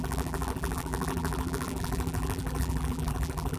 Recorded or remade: remade